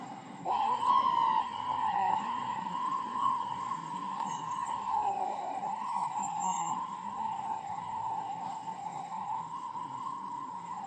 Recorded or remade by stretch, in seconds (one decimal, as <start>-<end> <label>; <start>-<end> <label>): 0.0-0.9 remade; 0.9-1.4 recorded; 1.4-10.9 remade